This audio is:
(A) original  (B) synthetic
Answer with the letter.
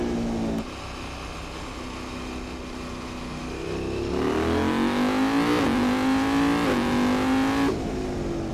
A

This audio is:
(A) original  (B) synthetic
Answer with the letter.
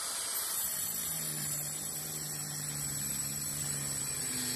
A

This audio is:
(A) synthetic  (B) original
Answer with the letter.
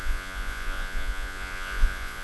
A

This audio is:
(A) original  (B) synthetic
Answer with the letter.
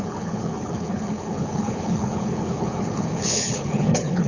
B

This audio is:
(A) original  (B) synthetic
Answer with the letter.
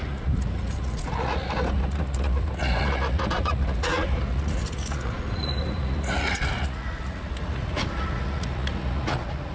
B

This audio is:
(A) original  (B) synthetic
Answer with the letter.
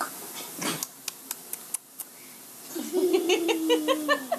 A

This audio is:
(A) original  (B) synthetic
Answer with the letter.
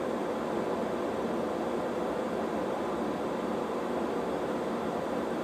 A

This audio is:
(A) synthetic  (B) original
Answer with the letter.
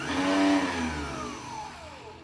B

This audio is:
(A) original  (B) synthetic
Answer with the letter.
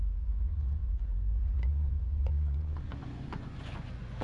B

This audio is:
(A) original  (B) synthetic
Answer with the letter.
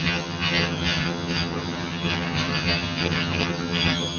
B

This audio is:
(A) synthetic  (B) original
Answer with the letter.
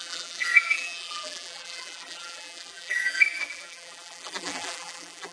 A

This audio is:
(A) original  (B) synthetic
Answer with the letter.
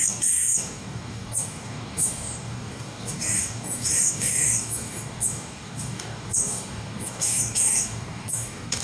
B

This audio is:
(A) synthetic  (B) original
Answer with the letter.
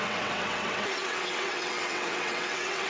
A